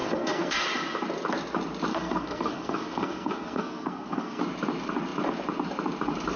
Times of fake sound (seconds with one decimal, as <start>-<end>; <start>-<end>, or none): 0.0-0.6; 1.9-4.4